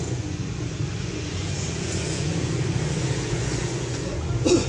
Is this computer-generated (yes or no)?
yes